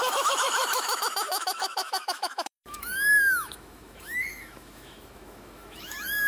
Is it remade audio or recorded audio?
remade